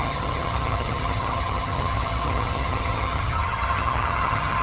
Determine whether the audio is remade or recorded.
remade